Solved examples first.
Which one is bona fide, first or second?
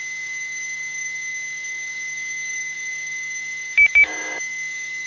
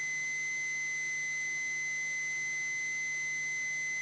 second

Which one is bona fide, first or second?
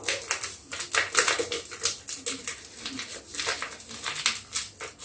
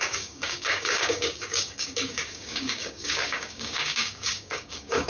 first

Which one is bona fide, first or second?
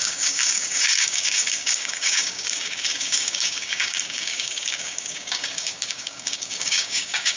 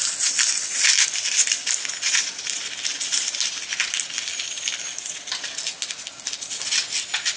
second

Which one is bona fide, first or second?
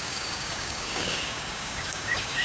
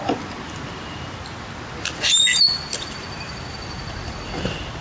second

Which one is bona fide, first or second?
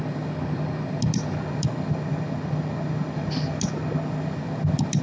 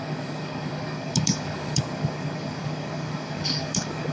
first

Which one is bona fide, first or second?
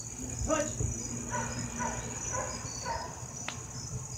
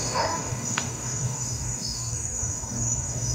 first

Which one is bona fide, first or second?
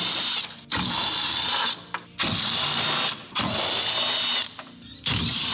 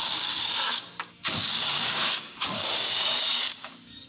first